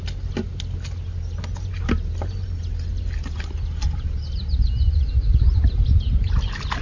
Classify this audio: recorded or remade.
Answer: recorded